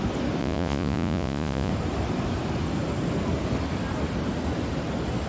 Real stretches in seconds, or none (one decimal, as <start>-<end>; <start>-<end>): 0.0-0.4; 1.7-5.3